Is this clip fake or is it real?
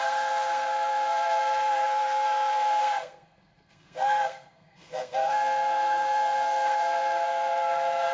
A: fake